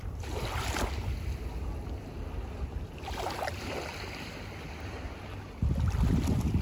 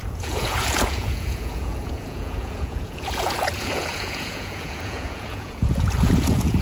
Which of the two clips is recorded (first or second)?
first